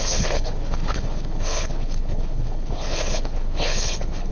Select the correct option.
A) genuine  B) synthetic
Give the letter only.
B